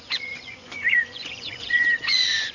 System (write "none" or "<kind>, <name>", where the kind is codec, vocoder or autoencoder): vocoder, Vocos